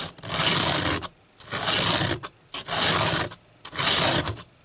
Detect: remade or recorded recorded